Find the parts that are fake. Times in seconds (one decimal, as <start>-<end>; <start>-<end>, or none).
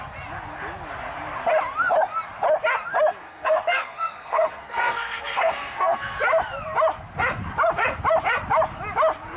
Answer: 3.2-6.2